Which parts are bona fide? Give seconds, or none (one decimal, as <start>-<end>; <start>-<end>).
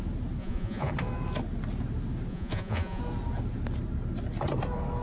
0.0-0.4; 0.9-2.3; 3.0-5.0